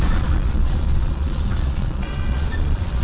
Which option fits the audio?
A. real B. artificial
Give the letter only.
B